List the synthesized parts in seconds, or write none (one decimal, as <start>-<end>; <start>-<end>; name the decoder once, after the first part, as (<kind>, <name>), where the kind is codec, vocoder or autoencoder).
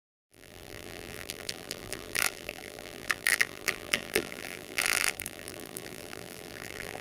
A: 0.0-7.0 (vocoder, BigVGAN v2)